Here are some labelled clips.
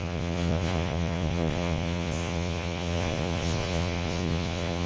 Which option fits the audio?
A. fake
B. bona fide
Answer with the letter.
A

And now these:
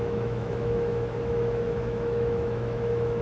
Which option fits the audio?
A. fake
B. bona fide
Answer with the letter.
A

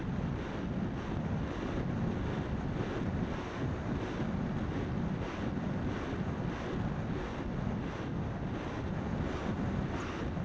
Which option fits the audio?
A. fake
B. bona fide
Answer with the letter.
B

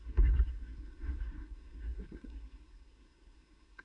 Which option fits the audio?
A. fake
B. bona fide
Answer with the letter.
A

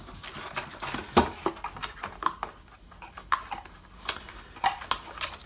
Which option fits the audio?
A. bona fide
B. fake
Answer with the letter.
A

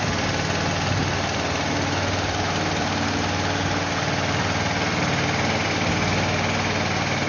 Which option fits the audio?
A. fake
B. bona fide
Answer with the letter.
B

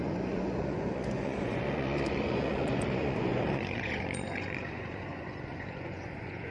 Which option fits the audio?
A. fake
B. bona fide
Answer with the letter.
A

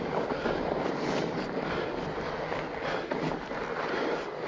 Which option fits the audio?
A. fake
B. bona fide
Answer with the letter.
B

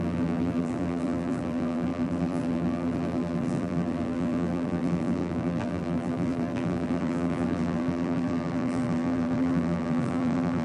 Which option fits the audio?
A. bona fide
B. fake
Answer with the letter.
B